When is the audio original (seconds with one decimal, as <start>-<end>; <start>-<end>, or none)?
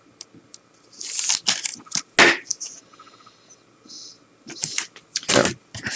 0.0-6.0